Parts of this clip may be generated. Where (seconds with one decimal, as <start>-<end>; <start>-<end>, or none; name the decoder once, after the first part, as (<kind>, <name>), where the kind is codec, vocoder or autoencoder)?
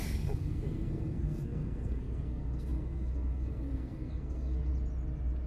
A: 0.0-4.7 (codec, SNAC)